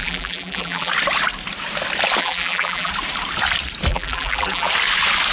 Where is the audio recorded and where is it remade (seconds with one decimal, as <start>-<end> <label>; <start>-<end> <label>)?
0.0-0.9 remade; 0.9-2.2 recorded; 2.2-2.9 remade; 2.9-3.9 recorded; 3.9-4.7 remade; 4.7-5.3 recorded